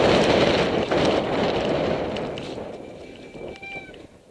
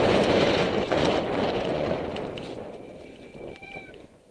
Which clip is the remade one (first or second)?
second